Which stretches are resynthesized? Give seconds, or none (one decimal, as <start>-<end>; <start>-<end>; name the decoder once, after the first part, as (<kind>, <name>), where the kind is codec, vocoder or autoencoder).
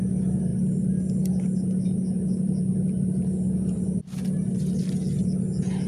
none